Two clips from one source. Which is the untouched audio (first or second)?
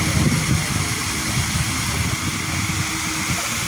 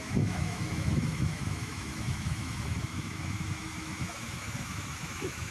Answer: first